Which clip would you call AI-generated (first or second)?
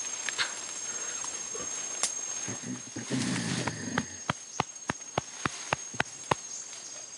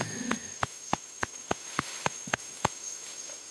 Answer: second